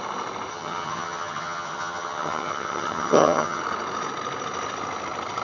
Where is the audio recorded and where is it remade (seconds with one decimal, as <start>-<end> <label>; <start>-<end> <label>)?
0.0-0.5 recorded; 0.5-3.6 remade; 3.6-5.4 recorded